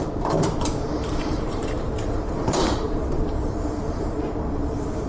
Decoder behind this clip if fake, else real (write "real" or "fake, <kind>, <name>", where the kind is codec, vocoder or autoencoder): fake, vocoder, BigVGAN v2